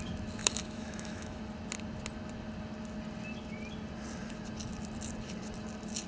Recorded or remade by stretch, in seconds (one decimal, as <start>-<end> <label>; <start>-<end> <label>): 0.0-0.4 recorded; 0.4-1.4 remade; 1.4-6.1 recorded